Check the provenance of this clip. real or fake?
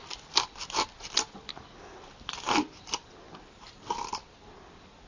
real